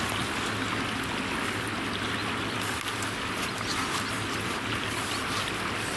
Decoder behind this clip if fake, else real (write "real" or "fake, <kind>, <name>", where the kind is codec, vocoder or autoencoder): real